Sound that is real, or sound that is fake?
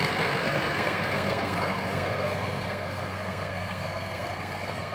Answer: fake